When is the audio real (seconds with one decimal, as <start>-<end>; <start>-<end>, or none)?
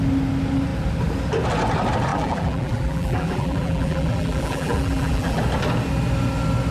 0.0-2.1; 5.4-6.7